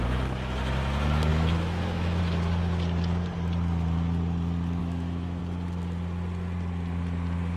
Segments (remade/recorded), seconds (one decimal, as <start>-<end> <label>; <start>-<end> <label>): 0.0-1.3 recorded; 1.3-2.2 remade; 2.2-4.8 recorded; 4.8-5.4 remade; 5.4-7.6 recorded